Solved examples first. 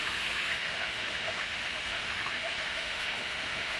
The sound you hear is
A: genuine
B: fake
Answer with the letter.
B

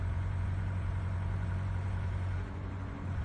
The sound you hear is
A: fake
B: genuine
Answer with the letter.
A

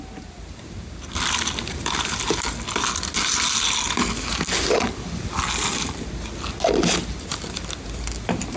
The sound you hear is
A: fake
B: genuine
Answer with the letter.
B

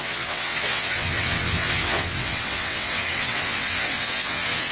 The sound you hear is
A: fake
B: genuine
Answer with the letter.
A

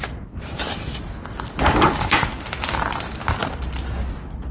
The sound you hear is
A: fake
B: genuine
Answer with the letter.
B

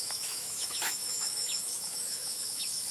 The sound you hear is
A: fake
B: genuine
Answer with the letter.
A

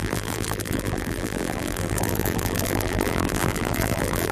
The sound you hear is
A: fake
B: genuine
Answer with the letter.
A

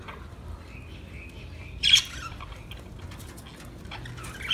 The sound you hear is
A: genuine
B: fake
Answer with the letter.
A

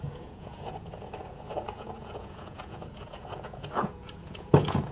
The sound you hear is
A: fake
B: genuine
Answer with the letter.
A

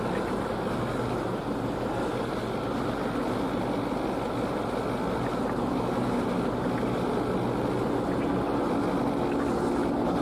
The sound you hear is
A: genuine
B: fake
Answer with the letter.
A